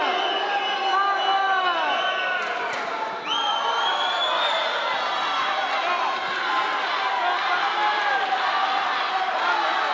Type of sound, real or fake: real